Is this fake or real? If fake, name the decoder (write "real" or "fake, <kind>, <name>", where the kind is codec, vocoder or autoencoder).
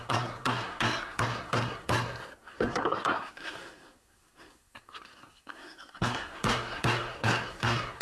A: fake, codec, SNAC